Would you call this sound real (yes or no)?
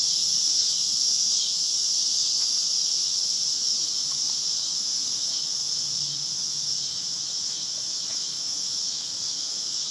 no